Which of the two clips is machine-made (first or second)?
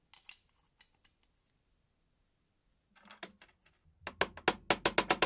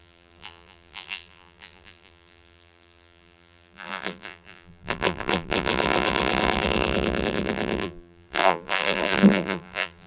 second